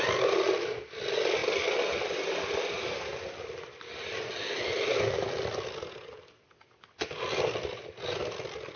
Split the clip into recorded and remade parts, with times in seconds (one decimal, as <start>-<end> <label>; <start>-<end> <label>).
0.0-8.8 recorded